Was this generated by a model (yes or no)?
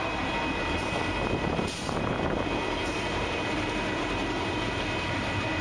yes